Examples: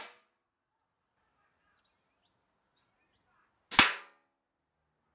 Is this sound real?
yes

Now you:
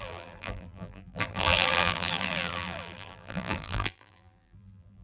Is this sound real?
no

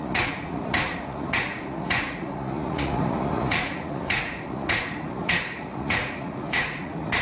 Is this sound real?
no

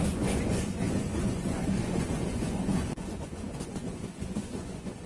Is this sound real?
no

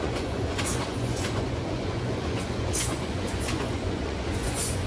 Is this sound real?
no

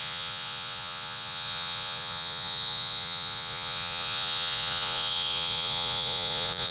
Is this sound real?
no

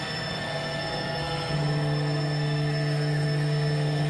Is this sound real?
no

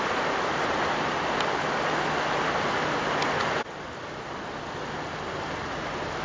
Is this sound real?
yes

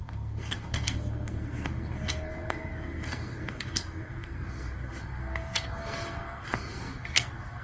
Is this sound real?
no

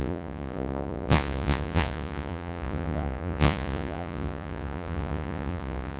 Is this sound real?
no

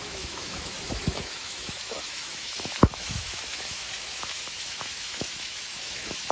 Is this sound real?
no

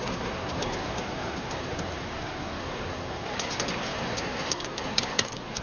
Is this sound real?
no